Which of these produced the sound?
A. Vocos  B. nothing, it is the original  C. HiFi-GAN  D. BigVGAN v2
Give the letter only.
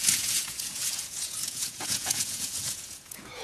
A